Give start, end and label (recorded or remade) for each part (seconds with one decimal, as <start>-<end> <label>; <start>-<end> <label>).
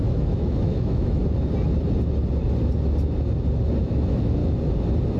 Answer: 0.0-1.2 remade; 1.2-3.8 recorded; 3.8-4.4 remade; 4.4-5.2 recorded